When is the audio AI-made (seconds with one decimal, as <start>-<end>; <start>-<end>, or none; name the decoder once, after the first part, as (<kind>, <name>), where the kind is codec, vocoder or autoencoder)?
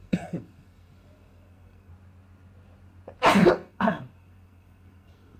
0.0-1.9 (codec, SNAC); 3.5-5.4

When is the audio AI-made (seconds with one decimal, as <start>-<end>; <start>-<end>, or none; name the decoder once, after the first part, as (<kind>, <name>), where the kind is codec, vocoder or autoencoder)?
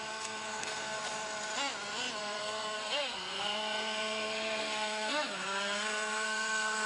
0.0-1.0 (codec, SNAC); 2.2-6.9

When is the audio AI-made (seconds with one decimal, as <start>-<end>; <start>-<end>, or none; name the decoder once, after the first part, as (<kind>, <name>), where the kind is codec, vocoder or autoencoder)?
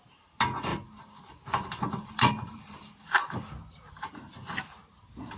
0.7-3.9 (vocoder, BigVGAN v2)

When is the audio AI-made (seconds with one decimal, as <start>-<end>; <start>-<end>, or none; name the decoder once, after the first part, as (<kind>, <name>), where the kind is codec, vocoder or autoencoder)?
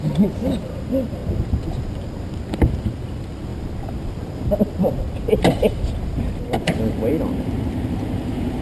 0.0-1.2 (vocoder, BigVGAN v2); 2.8-8.6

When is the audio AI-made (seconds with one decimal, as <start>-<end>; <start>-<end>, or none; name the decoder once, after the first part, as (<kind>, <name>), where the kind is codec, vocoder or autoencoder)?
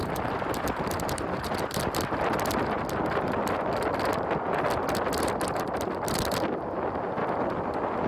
0.0-7.2 (vocoder, BigVGAN v2)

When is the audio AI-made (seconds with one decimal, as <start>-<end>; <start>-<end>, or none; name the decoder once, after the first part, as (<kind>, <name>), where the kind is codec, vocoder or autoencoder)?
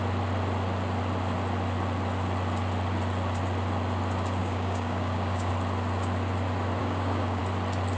4.4-5.5 (codec, DAC); 6.8-7.4